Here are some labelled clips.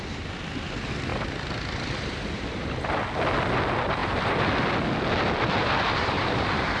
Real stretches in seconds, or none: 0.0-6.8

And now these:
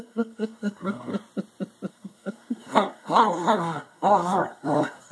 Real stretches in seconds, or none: 1.1-1.9